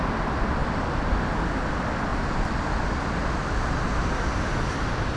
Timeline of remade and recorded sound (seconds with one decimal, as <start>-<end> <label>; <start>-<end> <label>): 0.0-0.6 recorded; 0.6-1.3 remade; 1.3-2.1 recorded; 2.1-2.8 remade; 2.8-3.2 recorded; 3.2-5.2 remade